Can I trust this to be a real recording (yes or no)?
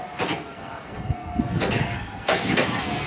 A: no